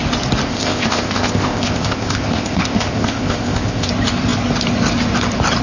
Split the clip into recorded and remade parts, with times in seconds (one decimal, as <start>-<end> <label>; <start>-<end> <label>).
0.0-0.5 recorded; 0.5-3.9 remade; 3.9-5.6 recorded